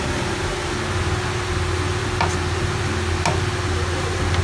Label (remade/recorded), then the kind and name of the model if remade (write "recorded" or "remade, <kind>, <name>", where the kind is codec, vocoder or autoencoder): recorded